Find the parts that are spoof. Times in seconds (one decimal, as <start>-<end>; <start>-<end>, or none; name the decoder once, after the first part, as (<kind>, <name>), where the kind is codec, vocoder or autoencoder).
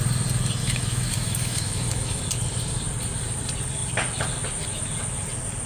0.6-2.2 (autoencoder, DAC-VAE)